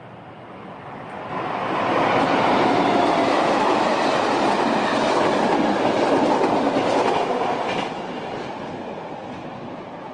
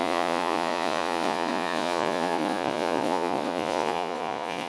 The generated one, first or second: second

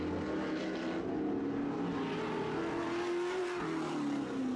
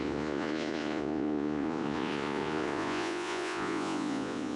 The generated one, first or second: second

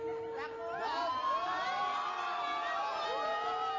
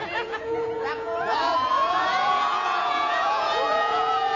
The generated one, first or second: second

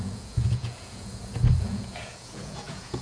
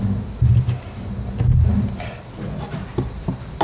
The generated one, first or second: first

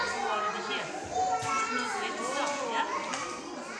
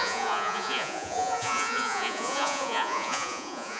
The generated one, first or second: second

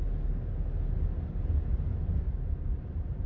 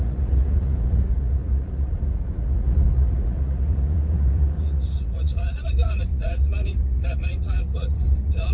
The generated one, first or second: second